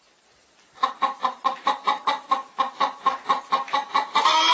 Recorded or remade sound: recorded